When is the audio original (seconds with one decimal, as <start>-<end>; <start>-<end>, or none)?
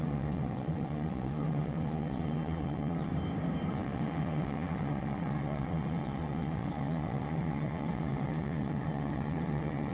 3.1-3.7